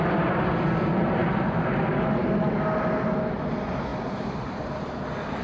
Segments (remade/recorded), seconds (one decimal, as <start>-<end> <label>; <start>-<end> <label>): 0.0-1.2 recorded; 1.2-1.7 remade; 1.7-3.9 recorded; 3.9-5.0 remade; 5.0-5.4 recorded

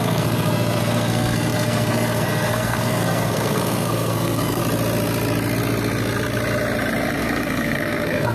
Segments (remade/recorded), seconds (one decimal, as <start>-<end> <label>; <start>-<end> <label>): 0.0-4.6 remade; 4.6-7.2 recorded; 7.2-8.3 remade

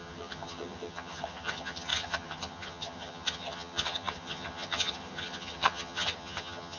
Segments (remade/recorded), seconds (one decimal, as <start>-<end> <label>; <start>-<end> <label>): 0.0-6.8 remade

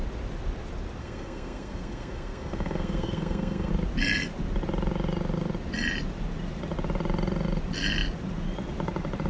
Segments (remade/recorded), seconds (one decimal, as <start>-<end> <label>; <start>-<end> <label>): 0.0-1.0 recorded; 1.0-3.7 remade; 3.7-9.3 recorded

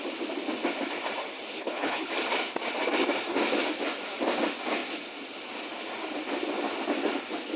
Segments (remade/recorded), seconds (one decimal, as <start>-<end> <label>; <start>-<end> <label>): 0.0-1.5 recorded; 1.5-2.1 remade; 2.1-7.6 recorded